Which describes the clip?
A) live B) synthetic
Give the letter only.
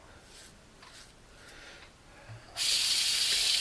A